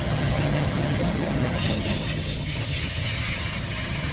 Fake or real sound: fake